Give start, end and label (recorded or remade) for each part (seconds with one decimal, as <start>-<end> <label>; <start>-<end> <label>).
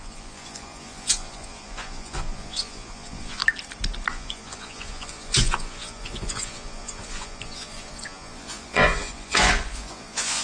0.0-3.4 remade; 3.4-4.1 recorded; 4.1-10.4 remade